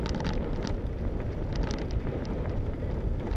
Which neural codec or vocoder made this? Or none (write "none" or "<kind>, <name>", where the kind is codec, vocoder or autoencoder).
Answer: none